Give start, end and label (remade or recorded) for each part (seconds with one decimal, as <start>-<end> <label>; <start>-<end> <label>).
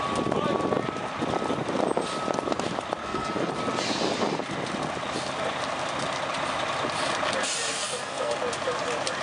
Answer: 0.0-3.0 recorded; 3.0-3.5 remade; 3.5-7.7 recorded; 7.7-8.4 remade; 8.4-9.2 recorded